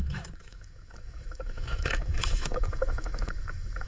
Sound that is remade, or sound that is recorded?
remade